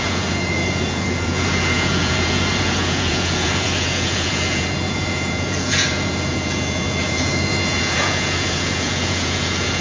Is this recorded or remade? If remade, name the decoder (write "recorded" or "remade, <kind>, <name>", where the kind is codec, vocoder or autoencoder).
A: remade, vocoder, Vocos